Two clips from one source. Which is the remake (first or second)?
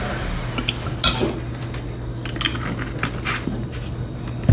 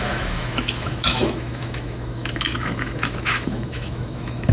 second